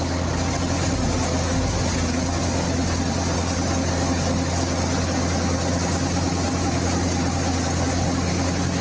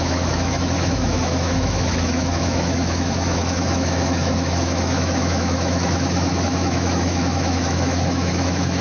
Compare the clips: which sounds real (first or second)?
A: first